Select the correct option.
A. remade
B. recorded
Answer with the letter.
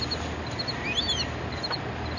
B